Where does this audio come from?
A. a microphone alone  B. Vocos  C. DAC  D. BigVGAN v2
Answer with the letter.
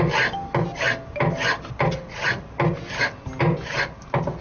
A